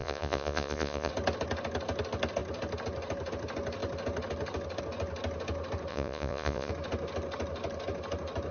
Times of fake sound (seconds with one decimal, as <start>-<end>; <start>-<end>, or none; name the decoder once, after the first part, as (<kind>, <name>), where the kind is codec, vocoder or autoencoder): 0.0-1.1 (vocoder, Vocos); 5.9-6.7